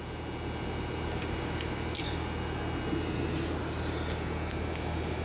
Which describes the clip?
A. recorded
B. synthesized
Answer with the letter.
A